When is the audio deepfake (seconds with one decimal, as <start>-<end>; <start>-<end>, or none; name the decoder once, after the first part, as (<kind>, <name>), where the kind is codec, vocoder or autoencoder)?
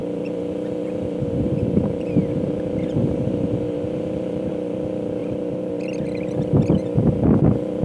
0.0-4.5 (vocoder, BigVGAN v2); 5.2-5.7